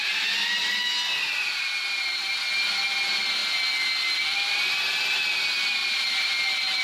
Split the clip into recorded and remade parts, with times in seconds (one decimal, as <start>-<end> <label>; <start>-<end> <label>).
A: 0.0-6.8 recorded